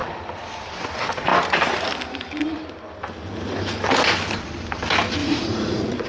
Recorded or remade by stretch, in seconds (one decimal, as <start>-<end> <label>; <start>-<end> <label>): 0.0-5.2 recorded; 5.2-6.1 remade